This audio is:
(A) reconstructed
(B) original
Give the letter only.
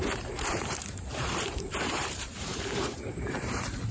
A